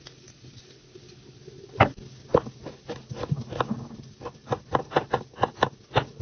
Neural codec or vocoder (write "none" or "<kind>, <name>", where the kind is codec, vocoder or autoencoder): none